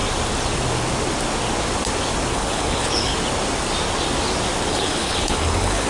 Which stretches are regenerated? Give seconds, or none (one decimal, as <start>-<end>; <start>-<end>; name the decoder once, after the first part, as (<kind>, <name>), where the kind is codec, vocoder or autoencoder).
2.3-3.1 (codec, HILCodec); 4.7-5.9